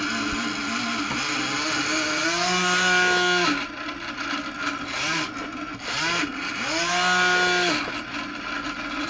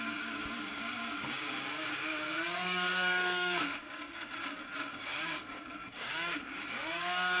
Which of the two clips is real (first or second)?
first